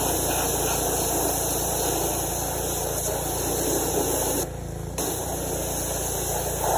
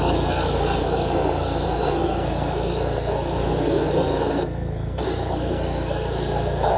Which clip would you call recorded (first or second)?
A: first